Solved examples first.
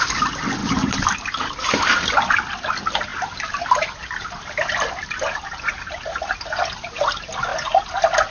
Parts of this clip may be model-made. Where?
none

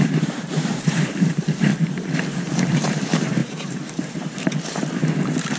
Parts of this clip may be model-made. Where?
0.0-1.7 (vocoder, BigVGAN v2); 2.6-5.6

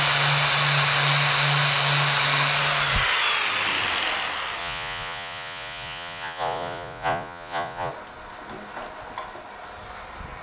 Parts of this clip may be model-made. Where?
4.6-7.9 (vocoder, Vocos)

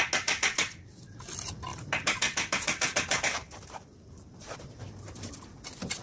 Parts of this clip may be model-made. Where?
1.7-5.3 (vocoder, BigVGAN v2)

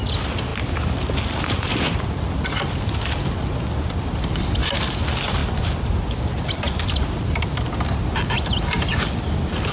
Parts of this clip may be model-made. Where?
none

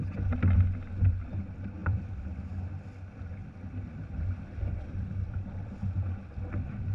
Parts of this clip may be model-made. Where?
1.8-2.7 (vocoder, BigVGAN v2); 3.4-6.4